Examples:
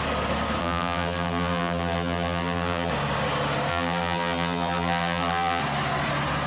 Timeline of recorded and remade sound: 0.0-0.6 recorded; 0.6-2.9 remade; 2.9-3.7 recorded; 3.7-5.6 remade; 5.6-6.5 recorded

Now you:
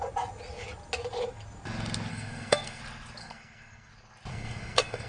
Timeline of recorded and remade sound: 0.0-2.1 recorded; 2.1-2.8 remade; 2.8-3.2 recorded; 3.2-3.9 remade; 3.9-4.3 recorded; 4.3-5.1 remade

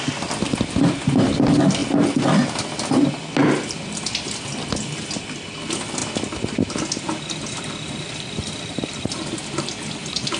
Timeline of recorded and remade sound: 0.0-3.4 recorded; 3.4-4.1 remade; 4.1-6.0 recorded; 6.0-9.1 remade; 9.1-10.4 recorded

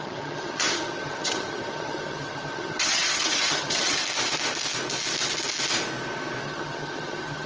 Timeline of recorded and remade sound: 0.0-4.0 remade; 4.0-6.4 recorded; 6.4-7.5 remade

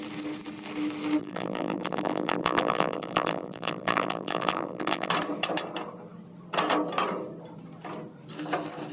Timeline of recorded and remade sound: 0.0-1.2 recorded; 1.2-5.1 remade; 5.1-8.9 recorded

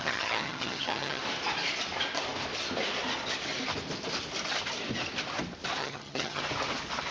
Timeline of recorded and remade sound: 0.0-1.2 remade; 1.2-5.8 recorded; 5.8-6.4 remade; 6.4-7.1 recorded

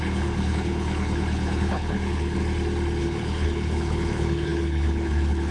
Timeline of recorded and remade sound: 0.0-2.4 remade; 2.4-3.0 recorded; 3.0-5.5 remade

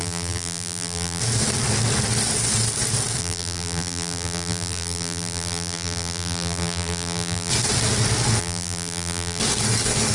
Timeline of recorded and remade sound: 0.0-1.2 remade; 1.2-3.2 recorded; 3.2-7.5 remade; 7.5-8.4 recorded; 8.4-9.4 remade; 9.4-10.1 recorded